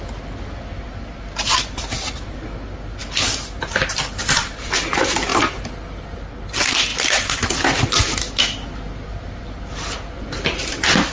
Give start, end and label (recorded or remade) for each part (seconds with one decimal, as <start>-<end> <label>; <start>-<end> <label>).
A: 0.0-11.1 recorded